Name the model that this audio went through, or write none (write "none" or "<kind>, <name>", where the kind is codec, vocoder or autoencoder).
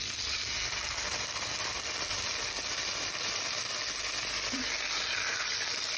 none